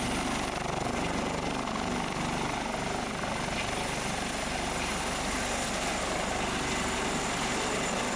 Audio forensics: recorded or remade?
recorded